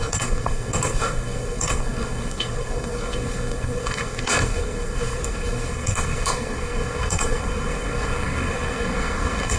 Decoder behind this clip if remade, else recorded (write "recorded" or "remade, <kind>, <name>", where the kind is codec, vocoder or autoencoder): remade, codec, SNAC